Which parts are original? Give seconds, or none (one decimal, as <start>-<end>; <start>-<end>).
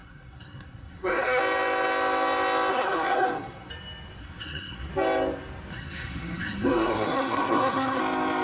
1.4-2.7; 3.7-4.2; 4.9-5.7; 8.0-8.4